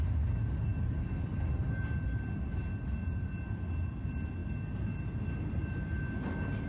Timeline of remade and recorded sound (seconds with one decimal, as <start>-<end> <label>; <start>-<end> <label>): 0.0-6.7 recorded